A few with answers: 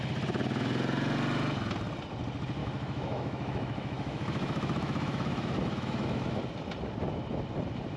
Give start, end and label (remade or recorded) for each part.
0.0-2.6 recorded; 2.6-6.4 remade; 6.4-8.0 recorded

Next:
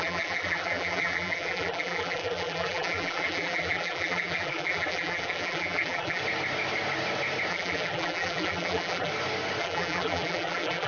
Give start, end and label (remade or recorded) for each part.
0.0-6.2 remade; 6.2-7.5 recorded; 7.5-9.1 remade; 9.1-9.6 recorded; 9.6-10.9 remade

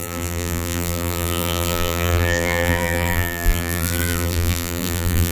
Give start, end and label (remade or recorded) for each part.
0.0-5.3 remade

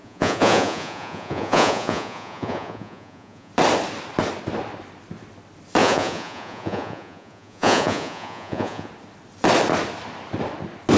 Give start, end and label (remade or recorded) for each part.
0.0-3.5 remade; 3.5-5.8 recorded; 5.8-8.9 remade; 8.9-11.0 recorded